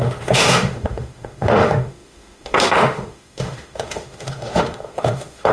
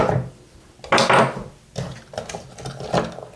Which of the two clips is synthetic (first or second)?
first